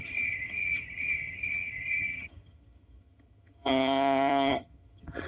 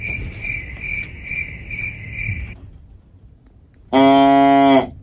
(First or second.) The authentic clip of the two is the second